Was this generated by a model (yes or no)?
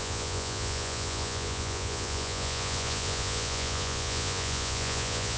yes